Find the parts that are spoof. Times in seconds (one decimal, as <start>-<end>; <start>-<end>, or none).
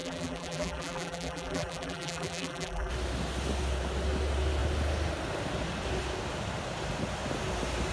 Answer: 0.0-2.9